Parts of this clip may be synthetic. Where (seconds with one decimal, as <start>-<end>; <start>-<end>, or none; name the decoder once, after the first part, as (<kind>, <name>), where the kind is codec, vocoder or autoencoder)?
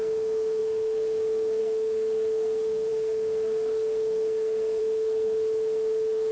0.0-6.3 (codec, SNAC)